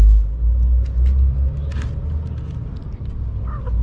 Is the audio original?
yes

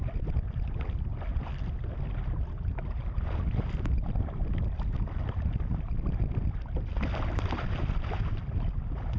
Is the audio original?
yes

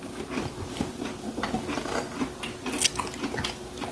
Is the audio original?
yes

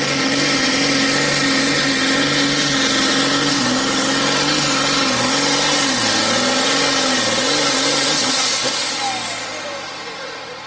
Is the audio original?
yes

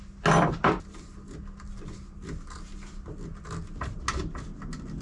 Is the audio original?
yes